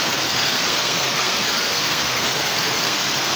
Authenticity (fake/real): fake